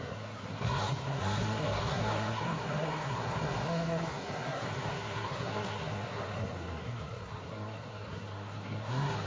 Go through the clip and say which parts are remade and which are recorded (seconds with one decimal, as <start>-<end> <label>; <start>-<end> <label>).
0.0-9.3 remade